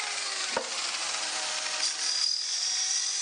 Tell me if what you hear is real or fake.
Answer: fake